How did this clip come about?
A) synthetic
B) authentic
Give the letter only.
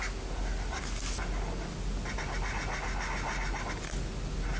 B